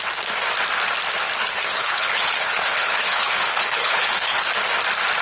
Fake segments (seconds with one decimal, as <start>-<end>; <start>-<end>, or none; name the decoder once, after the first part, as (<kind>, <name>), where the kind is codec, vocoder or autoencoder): 1.4-4.5 (codec, HILCodec)